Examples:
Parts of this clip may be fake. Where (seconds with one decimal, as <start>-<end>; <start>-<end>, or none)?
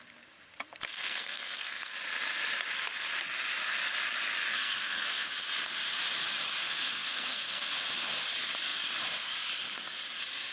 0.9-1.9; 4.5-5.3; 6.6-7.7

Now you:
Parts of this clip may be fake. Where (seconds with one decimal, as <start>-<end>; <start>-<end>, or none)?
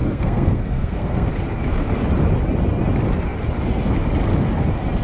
0.0-1.3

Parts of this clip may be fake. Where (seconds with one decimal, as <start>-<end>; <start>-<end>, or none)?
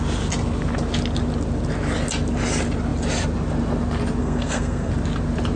4.2-4.9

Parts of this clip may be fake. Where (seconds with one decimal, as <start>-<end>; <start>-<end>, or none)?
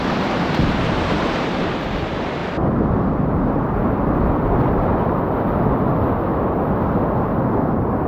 none